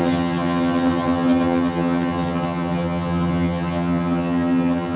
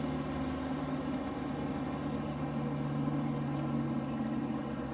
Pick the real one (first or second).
second